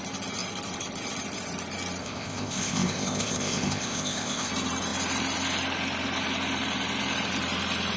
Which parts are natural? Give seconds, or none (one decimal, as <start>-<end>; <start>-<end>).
0.0-2.0; 4.5-8.0